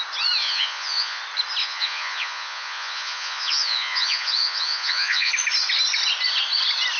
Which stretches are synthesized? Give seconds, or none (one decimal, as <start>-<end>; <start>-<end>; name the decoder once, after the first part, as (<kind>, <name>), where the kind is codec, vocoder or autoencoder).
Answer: 0.4-1.2 (vocoder, Vocos); 1.6-5.3